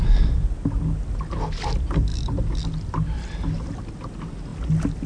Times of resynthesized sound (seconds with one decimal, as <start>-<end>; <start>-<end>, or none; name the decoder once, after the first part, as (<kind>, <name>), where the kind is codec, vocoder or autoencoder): none